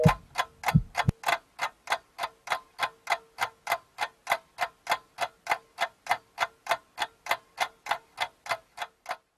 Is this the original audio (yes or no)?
yes